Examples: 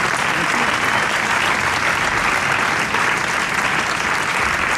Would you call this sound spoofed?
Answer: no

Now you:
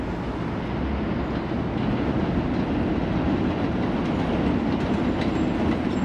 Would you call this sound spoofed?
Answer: no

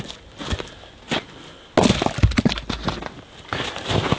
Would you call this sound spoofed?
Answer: no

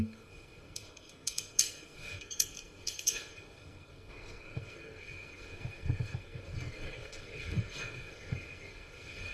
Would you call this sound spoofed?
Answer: yes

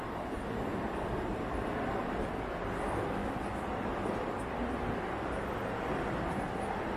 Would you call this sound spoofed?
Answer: no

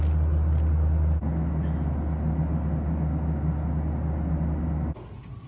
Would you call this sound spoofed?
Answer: no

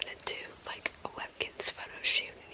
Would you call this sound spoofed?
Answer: yes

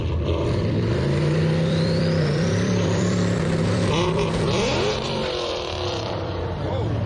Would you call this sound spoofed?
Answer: yes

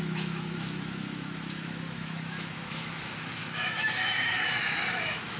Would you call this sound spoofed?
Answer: yes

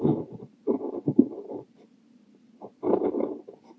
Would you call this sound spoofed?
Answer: no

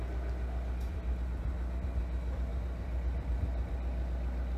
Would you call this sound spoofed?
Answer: no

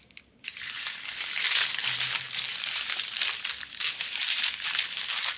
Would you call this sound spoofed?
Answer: no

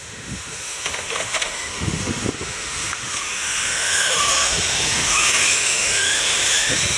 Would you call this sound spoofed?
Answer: yes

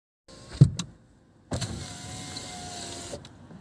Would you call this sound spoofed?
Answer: no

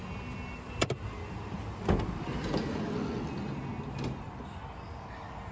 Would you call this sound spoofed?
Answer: no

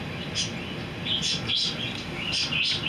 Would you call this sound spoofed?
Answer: no